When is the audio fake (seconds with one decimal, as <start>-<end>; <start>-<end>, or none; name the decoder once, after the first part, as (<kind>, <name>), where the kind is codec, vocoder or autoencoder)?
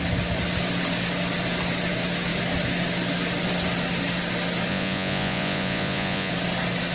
4.7-6.3 (vocoder, Vocos)